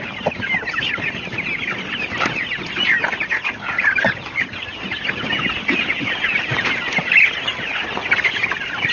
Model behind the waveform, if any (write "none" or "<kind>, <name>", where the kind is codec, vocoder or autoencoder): vocoder, BigVGAN v2